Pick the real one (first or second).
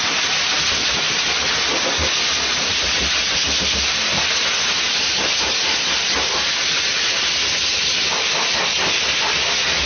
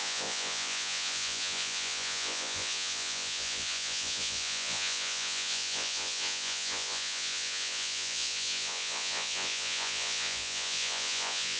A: first